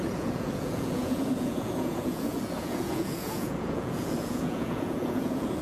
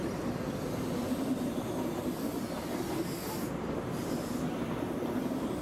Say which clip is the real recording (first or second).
second